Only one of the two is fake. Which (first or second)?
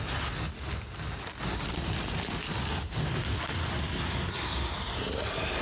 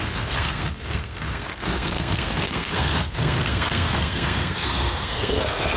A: second